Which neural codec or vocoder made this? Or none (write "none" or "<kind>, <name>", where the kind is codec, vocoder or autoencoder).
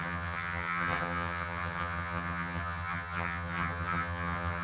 vocoder, HiFi-GAN